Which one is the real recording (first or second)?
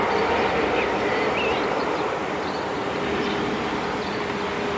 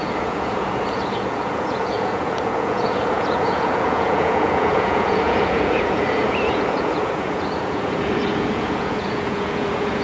first